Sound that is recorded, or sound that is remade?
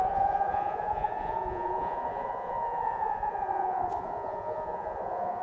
remade